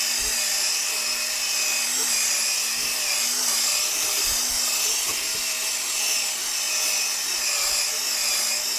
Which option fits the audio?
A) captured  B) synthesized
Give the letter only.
A